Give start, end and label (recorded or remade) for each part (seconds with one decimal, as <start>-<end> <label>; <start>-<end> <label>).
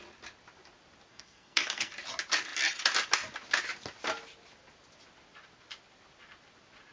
0.0-1.1 recorded; 1.1-1.9 remade; 1.9-6.9 recorded